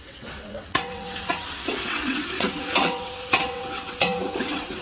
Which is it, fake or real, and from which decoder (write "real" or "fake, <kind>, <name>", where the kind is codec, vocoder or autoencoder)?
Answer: fake, vocoder, WaveNeXt